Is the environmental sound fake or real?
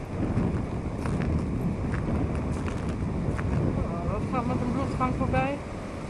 real